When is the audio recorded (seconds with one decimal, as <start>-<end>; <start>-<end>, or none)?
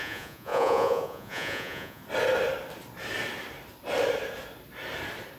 2.0-5.4